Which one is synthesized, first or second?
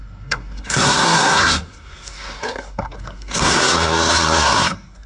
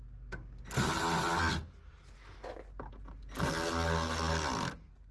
first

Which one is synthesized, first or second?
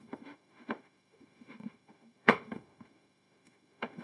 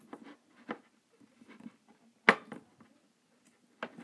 first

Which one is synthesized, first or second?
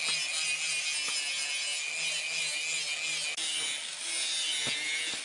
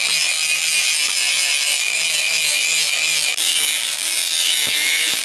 second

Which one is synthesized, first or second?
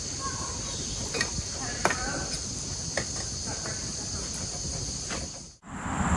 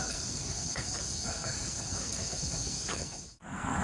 second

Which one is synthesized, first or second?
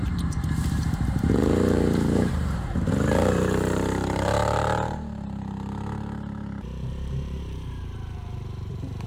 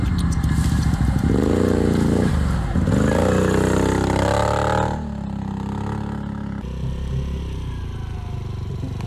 first